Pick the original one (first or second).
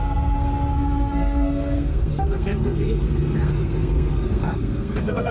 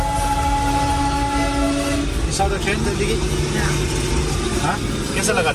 second